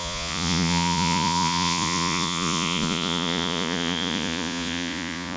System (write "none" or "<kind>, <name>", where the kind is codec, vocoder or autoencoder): vocoder, Vocos